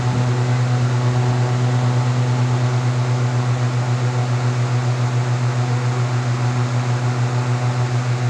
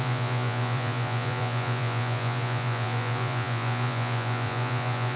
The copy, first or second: second